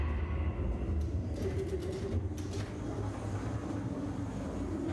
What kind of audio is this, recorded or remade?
recorded